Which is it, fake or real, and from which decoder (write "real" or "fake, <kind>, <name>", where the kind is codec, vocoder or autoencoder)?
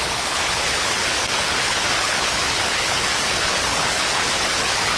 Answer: fake, codec, HILCodec